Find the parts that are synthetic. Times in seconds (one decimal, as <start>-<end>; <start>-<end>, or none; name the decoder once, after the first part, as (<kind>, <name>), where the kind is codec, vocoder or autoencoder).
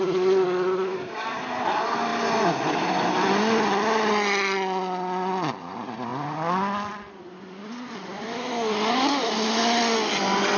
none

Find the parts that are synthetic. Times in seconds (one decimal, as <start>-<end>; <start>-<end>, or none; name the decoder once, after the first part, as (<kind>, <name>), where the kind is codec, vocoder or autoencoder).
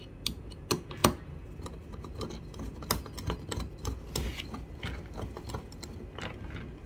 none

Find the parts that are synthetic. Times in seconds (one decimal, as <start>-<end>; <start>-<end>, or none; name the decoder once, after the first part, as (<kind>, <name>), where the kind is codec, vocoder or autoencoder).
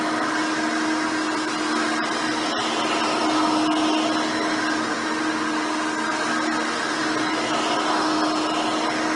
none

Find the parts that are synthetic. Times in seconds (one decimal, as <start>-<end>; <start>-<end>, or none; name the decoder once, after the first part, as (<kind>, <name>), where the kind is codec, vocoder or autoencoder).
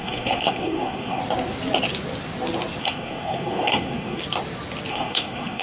0.0-1.2 (codec, SNAC); 2.8-4.2; 4.9-5.6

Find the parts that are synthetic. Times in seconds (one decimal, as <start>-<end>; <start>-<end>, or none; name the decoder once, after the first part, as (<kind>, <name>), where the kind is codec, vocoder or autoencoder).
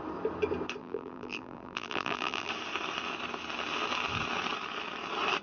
0.8-2.5 (vocoder, BigVGAN v2)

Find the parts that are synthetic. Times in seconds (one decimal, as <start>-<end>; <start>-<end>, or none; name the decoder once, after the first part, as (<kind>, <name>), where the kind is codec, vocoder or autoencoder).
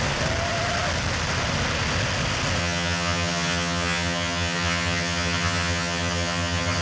2.6-6.8 (vocoder, HiFi-GAN)